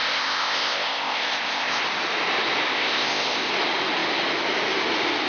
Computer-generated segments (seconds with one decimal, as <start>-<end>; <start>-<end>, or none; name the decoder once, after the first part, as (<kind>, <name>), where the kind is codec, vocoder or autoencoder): 0.0-1.8 (codec, ZipCodec); 2.7-3.5